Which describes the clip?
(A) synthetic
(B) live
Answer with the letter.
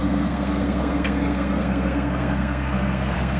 A